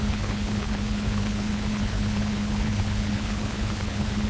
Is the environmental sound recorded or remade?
remade